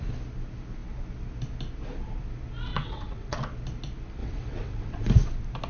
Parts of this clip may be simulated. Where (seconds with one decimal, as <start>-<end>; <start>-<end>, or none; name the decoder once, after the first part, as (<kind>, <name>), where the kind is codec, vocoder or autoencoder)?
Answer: 2.7-3.4 (vocoder, WaveNeXt); 4.2-5.1